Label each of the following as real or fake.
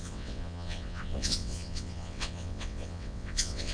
fake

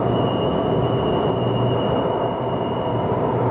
real